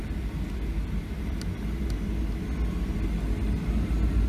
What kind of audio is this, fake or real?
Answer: real